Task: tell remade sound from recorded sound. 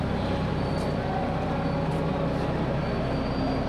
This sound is recorded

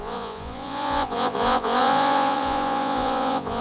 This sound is remade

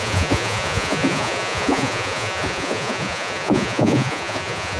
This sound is remade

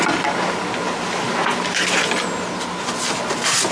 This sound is recorded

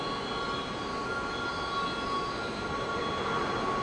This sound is recorded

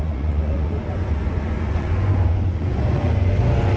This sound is remade